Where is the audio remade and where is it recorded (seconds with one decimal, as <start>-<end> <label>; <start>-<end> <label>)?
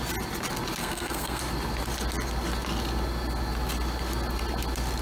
0.0-0.8 recorded; 0.8-1.4 remade; 1.4-5.0 recorded